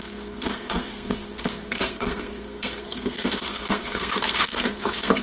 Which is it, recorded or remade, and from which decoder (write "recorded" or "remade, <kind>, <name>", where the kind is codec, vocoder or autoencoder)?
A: remade, codec, SNAC